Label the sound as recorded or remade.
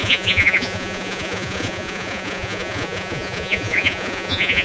remade